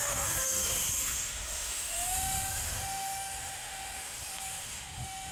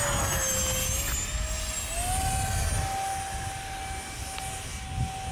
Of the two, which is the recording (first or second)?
second